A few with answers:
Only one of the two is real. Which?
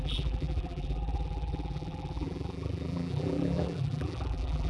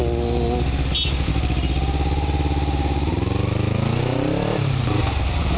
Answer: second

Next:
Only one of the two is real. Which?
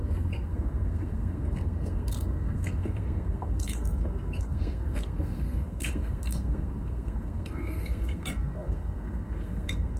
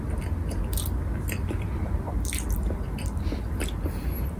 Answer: second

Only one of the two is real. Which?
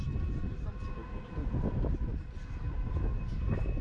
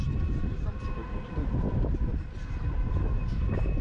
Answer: first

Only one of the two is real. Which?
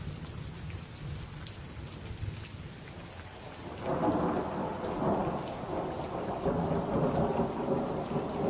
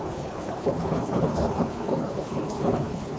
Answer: first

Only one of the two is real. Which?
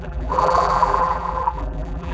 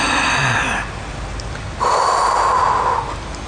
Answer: second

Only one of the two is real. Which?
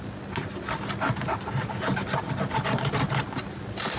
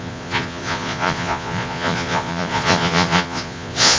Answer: first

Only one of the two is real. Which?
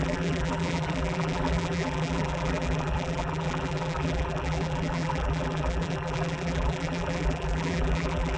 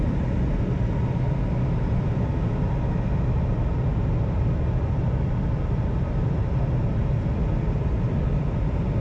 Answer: second